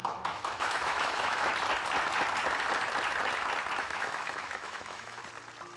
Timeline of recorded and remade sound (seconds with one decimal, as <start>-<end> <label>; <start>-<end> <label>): 0.0-1.5 remade; 1.5-3.8 recorded; 3.8-5.2 remade; 5.2-5.8 recorded